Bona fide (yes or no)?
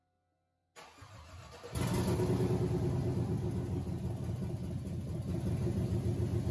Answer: yes